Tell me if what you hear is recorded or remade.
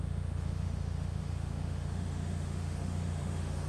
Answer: remade